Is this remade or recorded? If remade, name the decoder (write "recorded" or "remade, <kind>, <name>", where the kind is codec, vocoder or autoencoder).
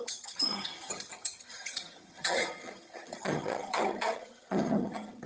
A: remade, vocoder, HiFi-GAN